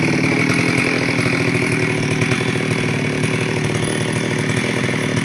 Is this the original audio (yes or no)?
yes